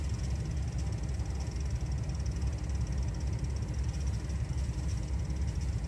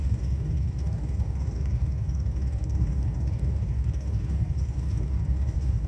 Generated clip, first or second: second